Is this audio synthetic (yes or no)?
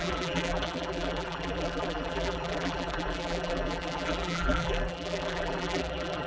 yes